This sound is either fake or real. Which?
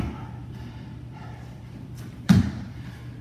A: fake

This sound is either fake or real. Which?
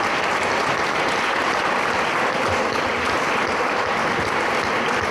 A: real